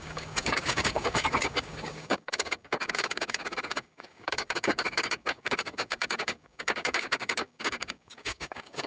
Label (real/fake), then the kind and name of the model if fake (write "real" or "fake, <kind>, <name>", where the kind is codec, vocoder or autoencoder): fake, codec, DAC